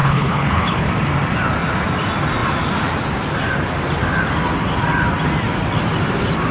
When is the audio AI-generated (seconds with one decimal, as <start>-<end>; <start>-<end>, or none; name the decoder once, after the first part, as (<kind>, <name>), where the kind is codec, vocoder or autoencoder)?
0.0-0.9 (codec, HILCodec)